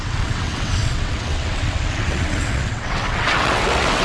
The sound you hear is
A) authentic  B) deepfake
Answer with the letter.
B